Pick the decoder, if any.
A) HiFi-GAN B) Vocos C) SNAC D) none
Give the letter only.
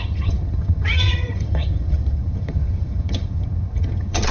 A